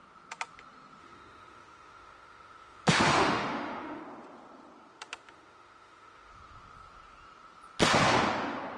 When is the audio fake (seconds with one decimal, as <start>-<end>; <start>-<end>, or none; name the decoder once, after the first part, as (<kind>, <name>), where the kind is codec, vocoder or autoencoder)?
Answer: 1.0-4.0 (autoencoder, DAC-VAE); 4.9-6.3

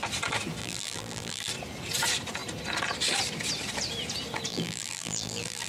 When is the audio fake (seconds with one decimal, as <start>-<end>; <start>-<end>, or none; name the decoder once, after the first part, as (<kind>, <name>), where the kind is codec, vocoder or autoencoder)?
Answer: 0.6-1.5 (vocoder, BigVGAN v2); 4.5-5.7

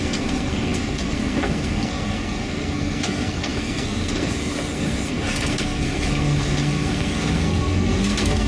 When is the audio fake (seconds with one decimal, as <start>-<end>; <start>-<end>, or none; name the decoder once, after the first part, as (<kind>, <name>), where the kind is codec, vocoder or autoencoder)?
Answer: 0.0-8.5 (codec, SNAC)

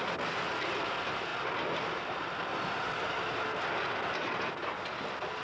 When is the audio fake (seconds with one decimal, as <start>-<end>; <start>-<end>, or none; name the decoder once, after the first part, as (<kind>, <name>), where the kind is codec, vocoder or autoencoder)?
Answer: none

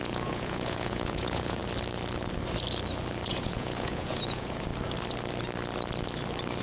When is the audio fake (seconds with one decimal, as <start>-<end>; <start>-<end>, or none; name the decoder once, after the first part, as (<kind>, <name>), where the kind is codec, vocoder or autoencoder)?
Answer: 0.0-1.6 (vocoder, Vocos); 3.3-4.7

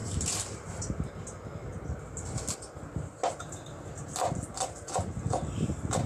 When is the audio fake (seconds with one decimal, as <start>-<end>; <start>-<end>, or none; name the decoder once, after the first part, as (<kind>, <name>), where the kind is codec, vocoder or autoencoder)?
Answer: 0.0-0.8 (vocoder, BigVGAN v2)

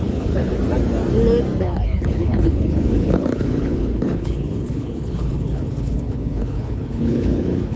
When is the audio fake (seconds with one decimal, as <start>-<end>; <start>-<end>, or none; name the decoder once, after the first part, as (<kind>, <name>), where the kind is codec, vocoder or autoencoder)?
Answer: 0.0-0.5 (codec, HILCodec); 1.6-7.8